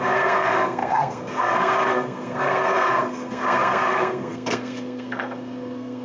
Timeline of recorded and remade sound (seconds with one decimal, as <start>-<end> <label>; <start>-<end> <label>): 0.0-6.0 remade